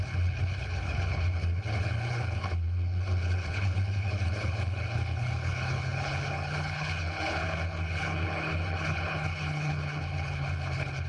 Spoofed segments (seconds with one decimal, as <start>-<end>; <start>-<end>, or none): 0.0-11.1